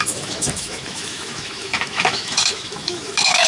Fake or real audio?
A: fake